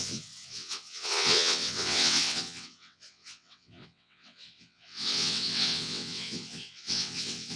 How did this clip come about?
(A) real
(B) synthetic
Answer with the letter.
B